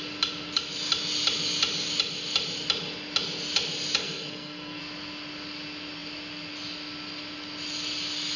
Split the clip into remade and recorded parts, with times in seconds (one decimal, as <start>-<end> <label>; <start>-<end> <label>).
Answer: 0.0-4.0 recorded; 4.0-4.8 remade; 4.8-8.4 recorded

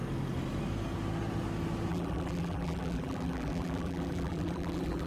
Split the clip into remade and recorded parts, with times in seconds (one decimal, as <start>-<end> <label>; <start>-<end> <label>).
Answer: 0.0-1.9 recorded; 1.9-5.1 remade